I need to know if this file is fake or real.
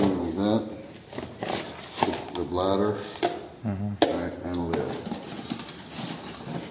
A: real